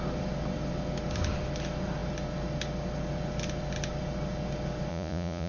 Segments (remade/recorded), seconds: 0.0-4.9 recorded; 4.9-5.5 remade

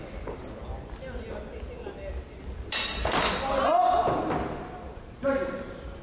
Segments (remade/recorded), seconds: 0.0-6.0 recorded